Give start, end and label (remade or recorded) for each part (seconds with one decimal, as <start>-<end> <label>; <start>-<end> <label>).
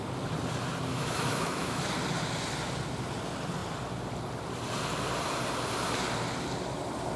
0.0-0.9 recorded; 0.9-1.8 remade; 1.8-7.2 recorded